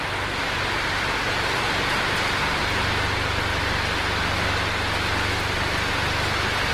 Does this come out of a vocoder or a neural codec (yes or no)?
no